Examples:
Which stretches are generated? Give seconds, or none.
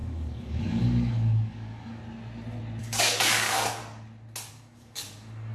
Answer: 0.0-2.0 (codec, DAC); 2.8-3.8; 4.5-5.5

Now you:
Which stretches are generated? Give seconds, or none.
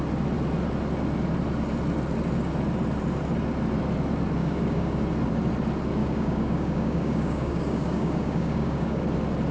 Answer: 4.4-5.0 (codec, DAC); 6.0-9.0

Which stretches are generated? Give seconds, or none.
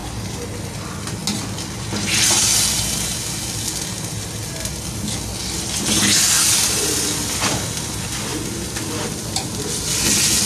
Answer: none